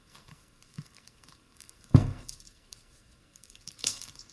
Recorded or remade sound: remade